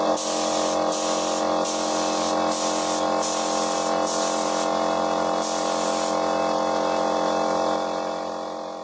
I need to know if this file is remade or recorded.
recorded